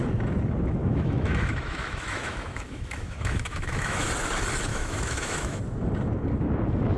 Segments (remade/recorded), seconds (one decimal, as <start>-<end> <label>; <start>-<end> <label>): 0.0-0.8 recorded; 0.8-4.1 remade; 4.1-4.7 recorded; 4.7-5.6 remade; 5.6-7.0 recorded